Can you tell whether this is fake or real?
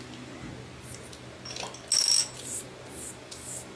real